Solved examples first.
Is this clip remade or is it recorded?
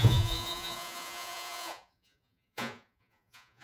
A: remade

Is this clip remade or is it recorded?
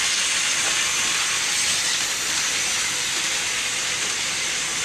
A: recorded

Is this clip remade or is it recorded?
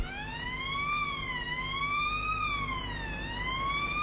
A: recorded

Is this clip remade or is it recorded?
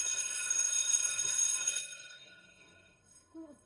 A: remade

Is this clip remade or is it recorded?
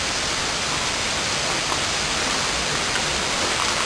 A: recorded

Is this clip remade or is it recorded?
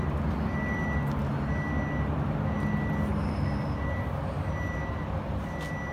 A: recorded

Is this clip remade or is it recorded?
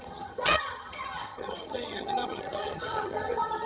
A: remade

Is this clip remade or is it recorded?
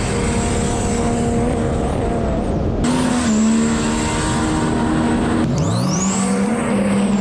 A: recorded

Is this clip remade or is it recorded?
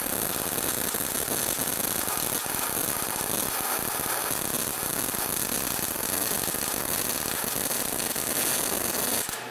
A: recorded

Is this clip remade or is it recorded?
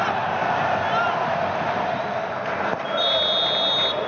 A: recorded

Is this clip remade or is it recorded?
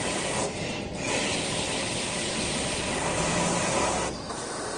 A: recorded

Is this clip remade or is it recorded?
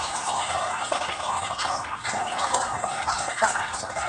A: remade